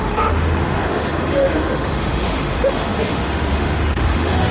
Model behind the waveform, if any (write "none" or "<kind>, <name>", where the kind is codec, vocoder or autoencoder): autoencoder, DAC-VAE